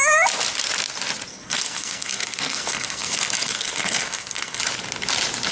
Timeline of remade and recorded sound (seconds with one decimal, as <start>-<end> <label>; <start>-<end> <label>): 0.0-1.3 recorded; 1.3-4.6 remade; 4.6-5.5 recorded